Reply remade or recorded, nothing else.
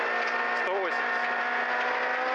recorded